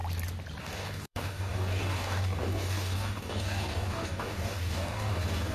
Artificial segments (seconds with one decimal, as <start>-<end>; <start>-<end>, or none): 0.6-5.5